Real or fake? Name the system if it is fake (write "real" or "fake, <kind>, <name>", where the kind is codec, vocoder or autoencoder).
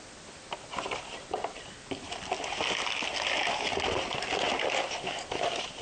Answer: real